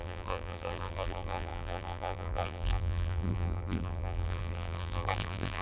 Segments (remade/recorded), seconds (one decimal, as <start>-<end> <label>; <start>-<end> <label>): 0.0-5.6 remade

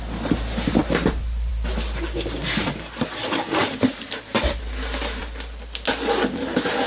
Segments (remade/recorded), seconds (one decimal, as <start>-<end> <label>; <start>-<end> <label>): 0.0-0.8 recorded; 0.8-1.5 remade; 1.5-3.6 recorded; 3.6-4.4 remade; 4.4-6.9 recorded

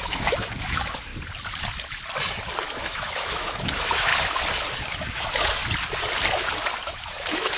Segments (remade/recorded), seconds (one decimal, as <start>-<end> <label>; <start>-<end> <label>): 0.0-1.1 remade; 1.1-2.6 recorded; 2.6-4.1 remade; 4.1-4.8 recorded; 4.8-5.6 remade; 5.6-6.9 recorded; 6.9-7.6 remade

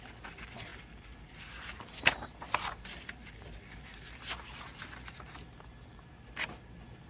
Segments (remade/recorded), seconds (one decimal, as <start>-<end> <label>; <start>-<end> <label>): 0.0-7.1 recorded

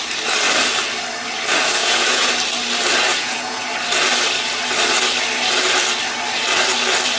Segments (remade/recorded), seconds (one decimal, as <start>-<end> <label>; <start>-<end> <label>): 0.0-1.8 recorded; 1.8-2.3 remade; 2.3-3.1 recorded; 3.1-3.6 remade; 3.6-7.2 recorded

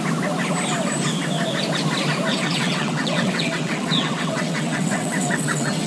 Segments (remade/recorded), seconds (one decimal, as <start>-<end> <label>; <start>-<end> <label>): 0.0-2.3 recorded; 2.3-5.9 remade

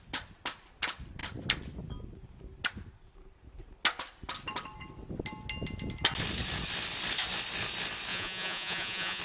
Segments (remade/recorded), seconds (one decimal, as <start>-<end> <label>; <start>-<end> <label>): 0.0-8.1 recorded; 8.1-9.2 remade